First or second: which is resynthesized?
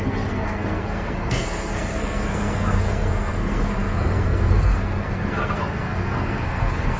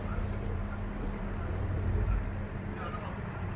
first